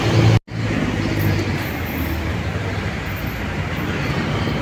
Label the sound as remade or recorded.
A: recorded